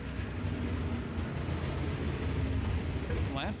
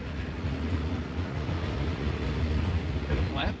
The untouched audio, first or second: first